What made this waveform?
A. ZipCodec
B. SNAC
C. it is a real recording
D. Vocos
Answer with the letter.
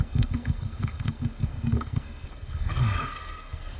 B